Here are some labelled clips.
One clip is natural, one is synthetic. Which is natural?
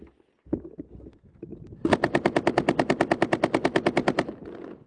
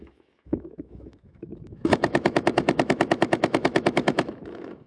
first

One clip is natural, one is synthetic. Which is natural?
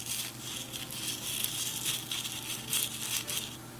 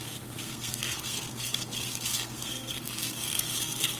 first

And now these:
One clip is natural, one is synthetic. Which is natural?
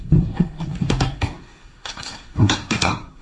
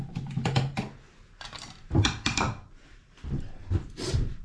second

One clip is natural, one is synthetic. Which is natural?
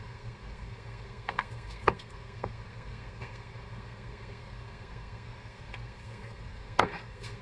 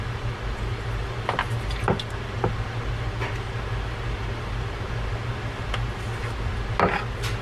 second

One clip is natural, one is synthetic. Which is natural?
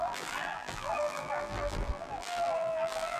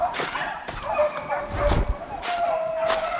second